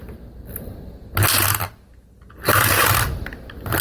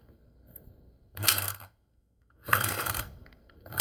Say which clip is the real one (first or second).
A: first